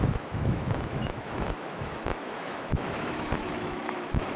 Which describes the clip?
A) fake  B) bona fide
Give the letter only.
A